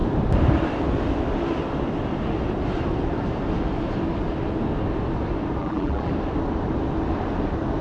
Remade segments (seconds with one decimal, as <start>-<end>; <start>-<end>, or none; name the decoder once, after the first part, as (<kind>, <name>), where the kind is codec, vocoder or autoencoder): 5.6-6.1 (vocoder, BigVGAN v2)